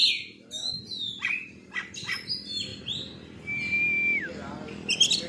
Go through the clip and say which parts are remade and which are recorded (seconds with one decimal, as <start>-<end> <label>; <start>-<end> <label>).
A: 0.0-5.3 recorded